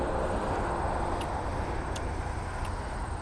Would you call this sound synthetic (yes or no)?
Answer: no